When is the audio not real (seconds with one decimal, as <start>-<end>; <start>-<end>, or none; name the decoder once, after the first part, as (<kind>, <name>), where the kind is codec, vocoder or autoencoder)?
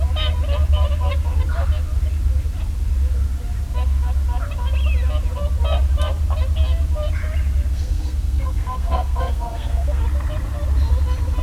7.7-10.0 (codec, SNAC)